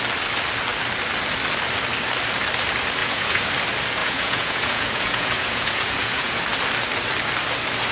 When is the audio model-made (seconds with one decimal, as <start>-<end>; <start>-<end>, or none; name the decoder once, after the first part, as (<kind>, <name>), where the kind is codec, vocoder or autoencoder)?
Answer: 3.0-3.5 (vocoder, Vocos); 4.0-6.4